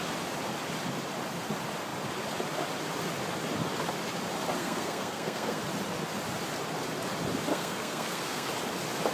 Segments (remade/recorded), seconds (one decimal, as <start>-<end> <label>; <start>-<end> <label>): 0.0-4.6 recorded; 4.6-5.6 remade; 5.6-7.5 recorded; 7.5-8.5 remade; 8.5-9.1 recorded